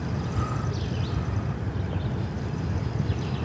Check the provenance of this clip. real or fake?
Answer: real